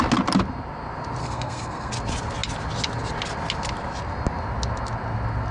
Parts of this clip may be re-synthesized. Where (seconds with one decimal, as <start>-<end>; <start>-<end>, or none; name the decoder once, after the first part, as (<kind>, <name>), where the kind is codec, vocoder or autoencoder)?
1.2-1.9 (codec, SNAC)